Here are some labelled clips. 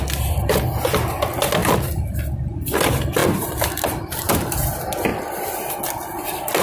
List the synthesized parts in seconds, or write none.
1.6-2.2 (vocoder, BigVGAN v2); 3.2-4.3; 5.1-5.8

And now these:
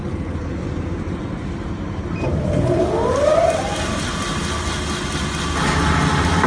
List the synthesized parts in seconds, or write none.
0.0-3.4 (vocoder, BigVGAN v2)

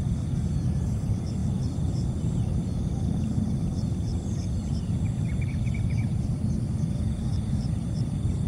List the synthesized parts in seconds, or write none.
0.0-8.5 (vocoder, BigVGAN v2)

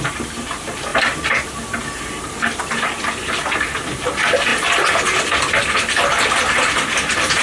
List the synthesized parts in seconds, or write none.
none

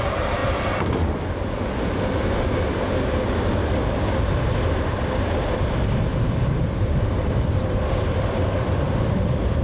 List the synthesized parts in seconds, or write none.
6.1-9.6 (vocoder, BigVGAN v2)

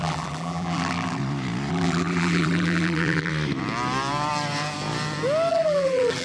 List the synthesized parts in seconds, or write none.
0.0-1.2 (vocoder, BigVGAN v2); 1.7-3.3; 5.5-6.2

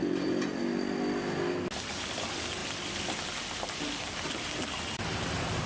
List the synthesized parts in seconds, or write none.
0.0-0.6 (vocoder, BigVGAN v2)

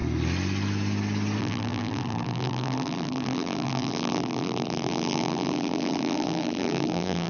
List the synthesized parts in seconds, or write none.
1.4-7.3 (vocoder, BigVGAN v2)